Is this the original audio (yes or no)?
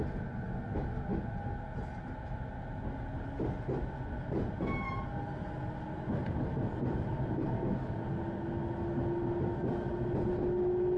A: yes